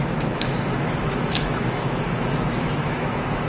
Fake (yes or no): yes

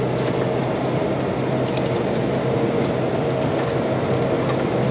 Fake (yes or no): no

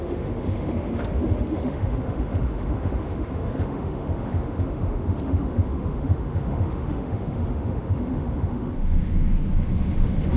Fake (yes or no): yes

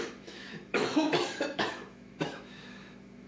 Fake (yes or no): yes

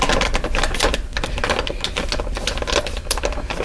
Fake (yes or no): no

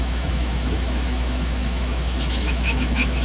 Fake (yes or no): yes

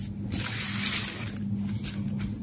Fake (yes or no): no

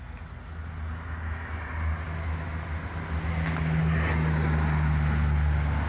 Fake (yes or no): no